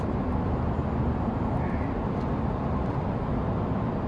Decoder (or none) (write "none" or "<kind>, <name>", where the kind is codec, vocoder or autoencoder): none